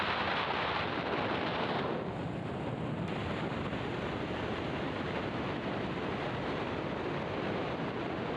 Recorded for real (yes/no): yes